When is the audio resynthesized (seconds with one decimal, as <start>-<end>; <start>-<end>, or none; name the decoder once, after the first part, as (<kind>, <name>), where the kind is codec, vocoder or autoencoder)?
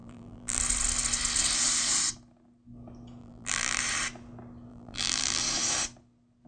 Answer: 0.0-0.6 (vocoder, BigVGAN v2); 3.2-3.8; 4.7-5.4